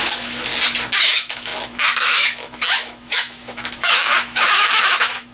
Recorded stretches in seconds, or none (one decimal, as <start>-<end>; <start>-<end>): 0.5-1.0